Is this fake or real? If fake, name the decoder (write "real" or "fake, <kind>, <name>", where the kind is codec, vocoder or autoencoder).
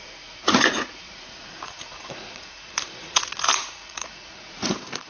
fake, vocoder, Vocos